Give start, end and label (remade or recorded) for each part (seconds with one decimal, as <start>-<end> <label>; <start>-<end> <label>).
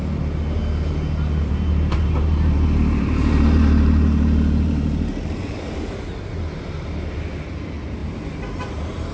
0.0-1.4 recorded; 1.4-6.3 remade; 6.3-9.1 recorded